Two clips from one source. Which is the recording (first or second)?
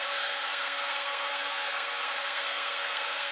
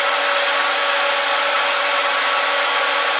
second